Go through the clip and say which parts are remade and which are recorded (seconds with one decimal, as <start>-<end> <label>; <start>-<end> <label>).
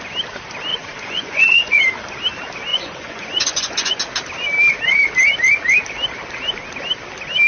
0.0-0.7 recorded; 0.7-1.8 remade; 1.8-2.7 recorded; 2.7-4.0 remade; 4.0-7.5 recorded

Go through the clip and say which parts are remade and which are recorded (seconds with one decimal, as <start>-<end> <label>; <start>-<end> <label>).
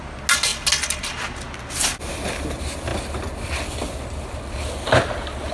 0.0-5.5 recorded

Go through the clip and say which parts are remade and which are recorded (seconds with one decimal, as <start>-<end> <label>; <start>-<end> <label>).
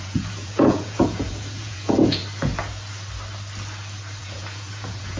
0.0-2.2 remade; 2.2-4.2 recorded; 4.2-5.2 remade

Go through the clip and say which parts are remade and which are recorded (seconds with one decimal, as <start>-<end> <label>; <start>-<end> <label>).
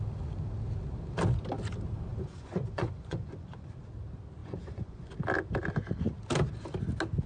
0.0-2.1 recorded; 2.1-3.7 remade; 3.7-4.4 recorded; 4.4-5.1 remade; 5.1-7.3 recorded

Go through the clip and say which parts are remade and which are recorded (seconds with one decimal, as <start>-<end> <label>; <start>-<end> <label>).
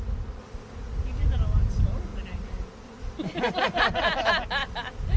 0.0-5.2 recorded